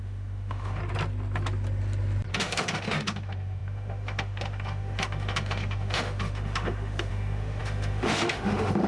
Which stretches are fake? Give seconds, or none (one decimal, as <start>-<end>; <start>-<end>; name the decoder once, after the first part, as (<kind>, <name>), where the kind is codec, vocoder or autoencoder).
0.0-0.8 (autoencoder, DAC-VAE); 2.3-8.9